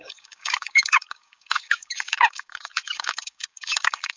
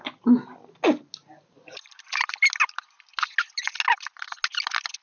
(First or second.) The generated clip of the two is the first